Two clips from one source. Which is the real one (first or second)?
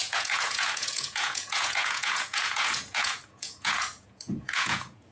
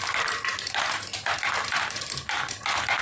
second